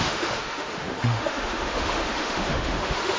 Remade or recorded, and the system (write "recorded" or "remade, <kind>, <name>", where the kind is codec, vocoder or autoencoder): remade, autoencoder, DAC-VAE